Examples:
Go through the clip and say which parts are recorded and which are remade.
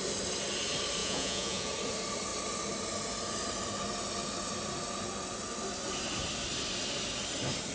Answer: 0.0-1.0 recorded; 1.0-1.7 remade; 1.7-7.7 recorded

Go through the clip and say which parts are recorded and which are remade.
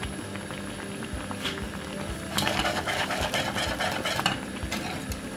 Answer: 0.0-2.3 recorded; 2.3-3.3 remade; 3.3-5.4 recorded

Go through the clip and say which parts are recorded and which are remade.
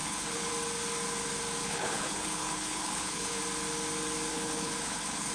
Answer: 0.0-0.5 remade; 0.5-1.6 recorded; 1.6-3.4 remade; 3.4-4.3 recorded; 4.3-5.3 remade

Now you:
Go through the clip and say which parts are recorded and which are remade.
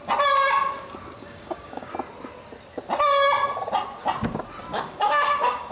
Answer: 0.0-1.2 recorded; 1.2-1.9 remade; 1.9-4.7 recorded; 4.7-5.7 remade